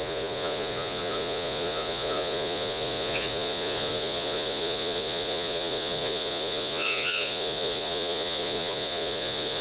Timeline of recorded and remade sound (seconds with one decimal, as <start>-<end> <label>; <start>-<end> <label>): 0.0-9.6 remade